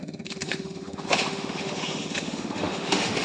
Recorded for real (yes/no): no